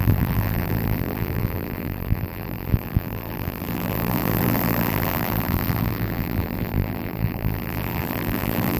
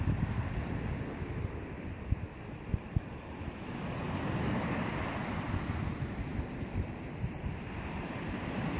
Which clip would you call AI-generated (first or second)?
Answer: first